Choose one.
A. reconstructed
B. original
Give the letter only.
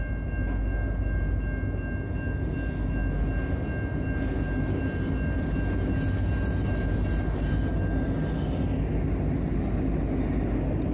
B